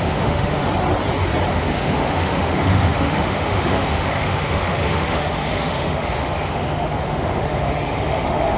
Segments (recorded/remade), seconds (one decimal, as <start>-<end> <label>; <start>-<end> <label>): 0.0-0.6 remade; 0.6-1.5 recorded; 1.5-8.6 remade